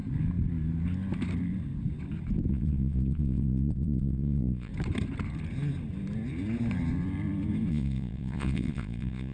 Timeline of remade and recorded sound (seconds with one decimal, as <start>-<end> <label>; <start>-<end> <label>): 0.0-2.5 recorded; 2.5-4.7 remade; 4.7-7.7 recorded; 7.7-9.3 remade